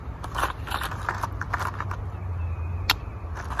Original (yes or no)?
yes